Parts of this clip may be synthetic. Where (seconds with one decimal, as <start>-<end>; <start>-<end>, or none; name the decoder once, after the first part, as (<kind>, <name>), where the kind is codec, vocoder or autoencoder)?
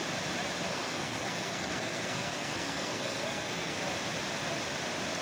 0.7-3.8 (codec, SNAC)